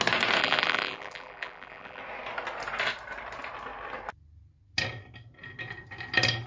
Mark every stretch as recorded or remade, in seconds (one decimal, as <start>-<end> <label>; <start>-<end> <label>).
0.0-0.4 recorded; 0.4-2.0 remade; 2.0-6.5 recorded